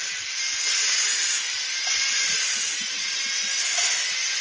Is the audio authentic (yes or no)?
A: yes